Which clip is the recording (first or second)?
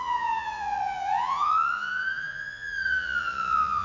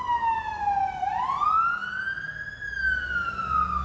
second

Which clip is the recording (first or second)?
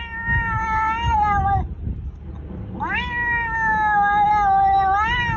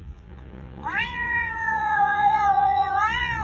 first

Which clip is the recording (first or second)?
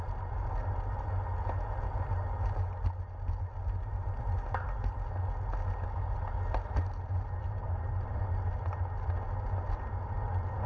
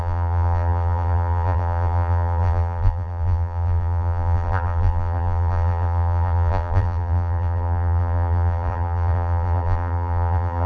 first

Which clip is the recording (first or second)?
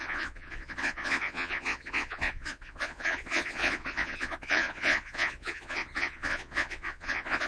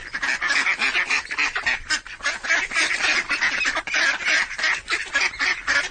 second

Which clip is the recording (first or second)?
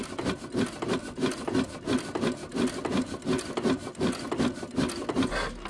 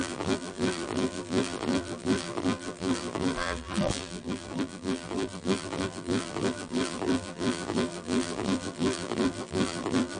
first